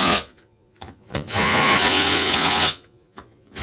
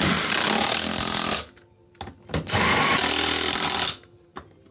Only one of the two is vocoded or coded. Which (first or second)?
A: first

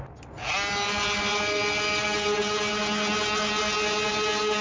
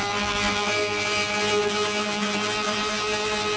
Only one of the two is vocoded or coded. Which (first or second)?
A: second